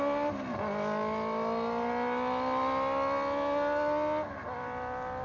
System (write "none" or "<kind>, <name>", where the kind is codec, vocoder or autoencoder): none